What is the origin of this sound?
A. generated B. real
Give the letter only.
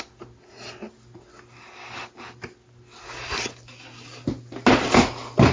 B